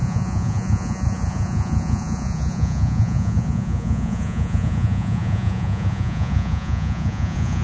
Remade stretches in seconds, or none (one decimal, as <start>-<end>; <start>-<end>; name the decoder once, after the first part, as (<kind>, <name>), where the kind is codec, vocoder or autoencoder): 0.0-7.6 (vocoder, Vocos)